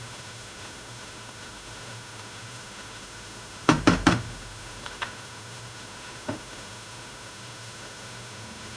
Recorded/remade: remade